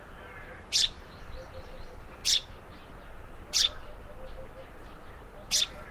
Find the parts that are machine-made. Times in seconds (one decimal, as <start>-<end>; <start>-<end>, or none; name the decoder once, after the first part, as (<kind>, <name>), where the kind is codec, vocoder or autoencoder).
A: 0.0-2.2 (vocoder, BigVGAN v2)